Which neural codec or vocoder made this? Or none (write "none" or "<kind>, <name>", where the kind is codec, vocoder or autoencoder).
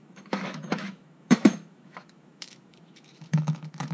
autoencoder, DAC-VAE